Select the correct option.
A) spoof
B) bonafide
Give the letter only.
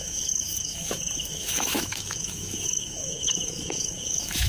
A